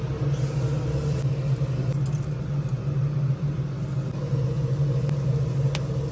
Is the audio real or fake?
real